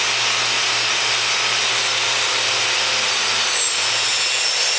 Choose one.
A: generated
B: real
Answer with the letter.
B